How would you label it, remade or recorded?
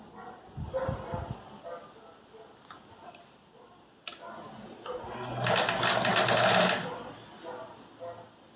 recorded